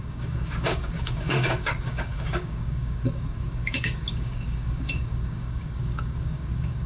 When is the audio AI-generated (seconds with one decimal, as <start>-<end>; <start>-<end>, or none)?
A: 0.0-6.9